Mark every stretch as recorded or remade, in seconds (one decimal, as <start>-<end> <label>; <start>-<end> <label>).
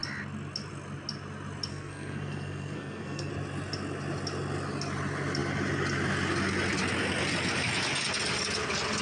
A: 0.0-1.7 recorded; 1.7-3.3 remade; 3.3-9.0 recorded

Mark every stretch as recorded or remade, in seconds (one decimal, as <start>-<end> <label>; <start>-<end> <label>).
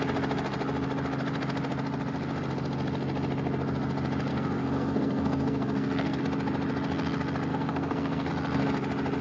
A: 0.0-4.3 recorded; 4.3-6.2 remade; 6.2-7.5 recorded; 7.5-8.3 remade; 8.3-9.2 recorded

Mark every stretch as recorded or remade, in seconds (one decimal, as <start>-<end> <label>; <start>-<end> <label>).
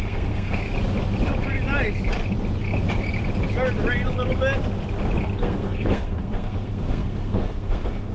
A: 0.0-0.6 remade; 0.6-5.4 recorded; 5.4-8.1 remade